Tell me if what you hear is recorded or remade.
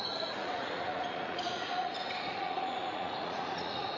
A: remade